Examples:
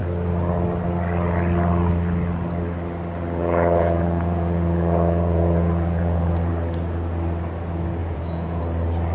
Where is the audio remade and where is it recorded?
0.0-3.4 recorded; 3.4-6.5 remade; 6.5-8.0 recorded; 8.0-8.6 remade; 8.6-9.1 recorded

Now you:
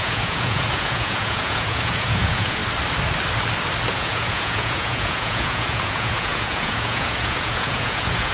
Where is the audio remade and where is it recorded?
0.0-2.6 remade; 2.6-3.9 recorded; 3.9-8.3 remade

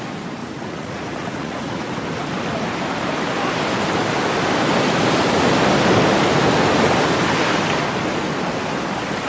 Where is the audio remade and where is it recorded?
0.0-0.4 recorded; 0.4-1.9 remade; 1.9-9.3 recorded

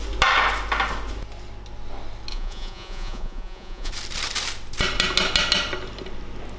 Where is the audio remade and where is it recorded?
0.0-2.3 recorded; 2.3-3.9 remade; 3.9-6.6 recorded

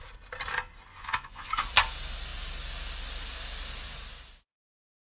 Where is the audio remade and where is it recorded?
0.0-0.9 recorded; 0.9-1.5 remade; 1.5-5.0 recorded

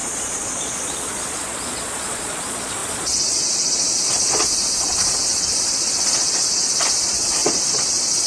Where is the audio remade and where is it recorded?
0.0-8.3 remade

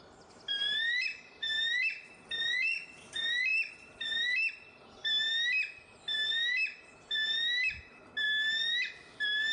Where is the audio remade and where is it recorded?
0.0-9.5 recorded